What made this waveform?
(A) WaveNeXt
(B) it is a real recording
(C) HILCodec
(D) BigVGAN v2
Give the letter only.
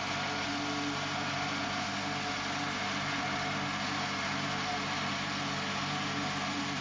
B